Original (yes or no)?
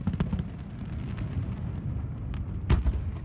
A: yes